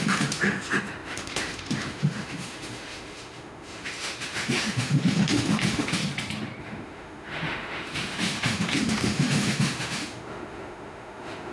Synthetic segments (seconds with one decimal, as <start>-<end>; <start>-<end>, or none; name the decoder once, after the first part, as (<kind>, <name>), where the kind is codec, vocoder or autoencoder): 0.0-6.0 (autoencoder, DAC-VAE); 6.6-11.5